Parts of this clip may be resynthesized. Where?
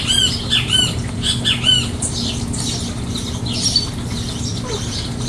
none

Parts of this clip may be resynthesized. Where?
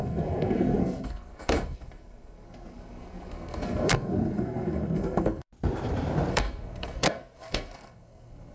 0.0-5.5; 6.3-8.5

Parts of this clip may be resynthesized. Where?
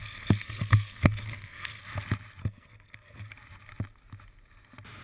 0.0-1.8; 2.4-3.3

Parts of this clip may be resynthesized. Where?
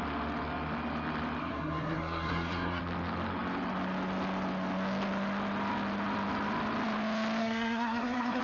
1.4-2.8; 7.4-8.4